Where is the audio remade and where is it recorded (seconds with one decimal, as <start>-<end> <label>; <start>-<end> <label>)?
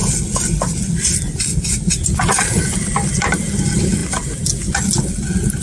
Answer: 0.0-5.6 recorded